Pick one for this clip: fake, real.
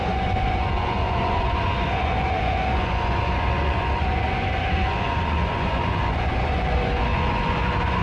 fake